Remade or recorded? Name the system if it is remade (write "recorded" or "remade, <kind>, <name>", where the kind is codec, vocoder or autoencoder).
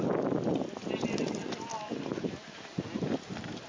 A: recorded